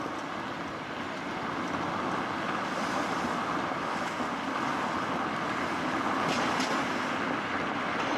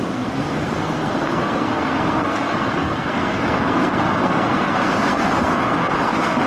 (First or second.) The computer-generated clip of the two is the second